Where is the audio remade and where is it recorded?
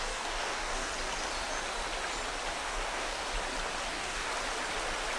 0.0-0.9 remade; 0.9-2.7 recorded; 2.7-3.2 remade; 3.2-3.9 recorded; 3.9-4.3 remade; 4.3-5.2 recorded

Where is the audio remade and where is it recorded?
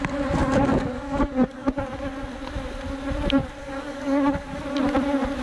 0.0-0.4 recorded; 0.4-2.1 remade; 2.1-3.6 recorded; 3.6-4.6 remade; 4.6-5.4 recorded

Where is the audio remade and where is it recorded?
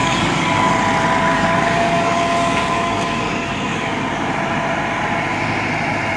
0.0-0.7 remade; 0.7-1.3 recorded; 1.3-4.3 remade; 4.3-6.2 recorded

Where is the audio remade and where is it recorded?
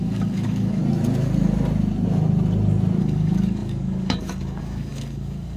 0.0-0.8 remade; 0.8-3.0 recorded; 3.0-5.6 remade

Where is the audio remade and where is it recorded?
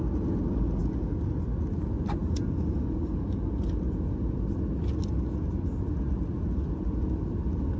0.0-7.8 recorded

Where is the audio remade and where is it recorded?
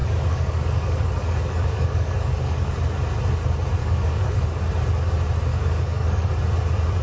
0.0-2.7 remade; 2.7-3.8 recorded; 3.8-4.6 remade; 4.6-5.5 recorded; 5.5-6.3 remade; 6.3-7.0 recorded